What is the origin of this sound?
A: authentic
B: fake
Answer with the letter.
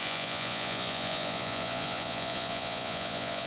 B